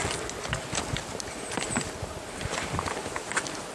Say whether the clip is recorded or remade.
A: recorded